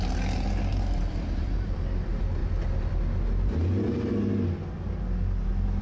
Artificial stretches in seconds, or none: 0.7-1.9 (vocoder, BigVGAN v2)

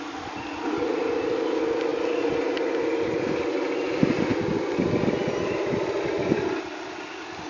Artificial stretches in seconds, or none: none

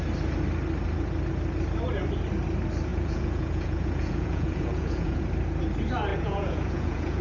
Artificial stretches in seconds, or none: 2.9-5.2 (vocoder, Vocos); 6.1-7.2

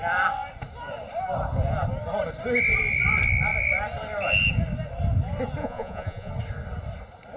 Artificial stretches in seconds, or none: 5.6-6.3 (vocoder, Vocos)

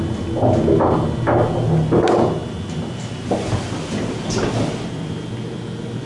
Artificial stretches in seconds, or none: 2.4-5.2 (vocoder, BigVGAN v2)

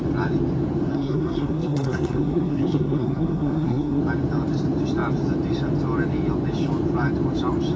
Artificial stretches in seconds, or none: 0.9-4.0 (codec, SNAC)

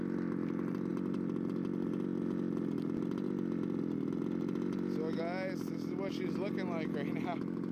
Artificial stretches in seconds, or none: none

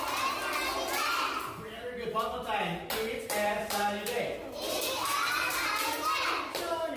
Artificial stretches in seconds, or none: 5.1-6.3 (vocoder, BigVGAN v2)